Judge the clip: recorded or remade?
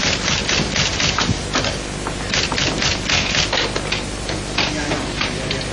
recorded